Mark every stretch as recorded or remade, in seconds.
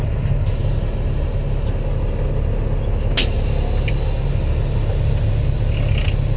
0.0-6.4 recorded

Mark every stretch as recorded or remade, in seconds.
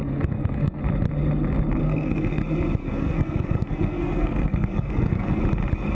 0.0-0.8 remade; 0.8-1.8 recorded; 1.8-2.4 remade; 2.4-2.8 recorded; 2.8-5.4 remade; 5.4-5.9 recorded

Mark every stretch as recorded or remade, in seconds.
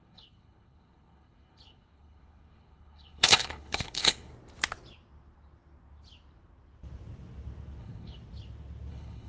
0.0-4.3 remade; 4.3-7.8 recorded; 7.8-8.2 remade; 8.2-8.9 recorded; 8.9-9.3 remade